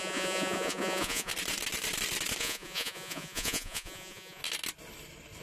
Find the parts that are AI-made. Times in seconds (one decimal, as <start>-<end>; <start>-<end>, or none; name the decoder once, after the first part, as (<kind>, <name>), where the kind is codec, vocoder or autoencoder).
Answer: 0.0-1.3 (vocoder, Vocos); 2.4-4.4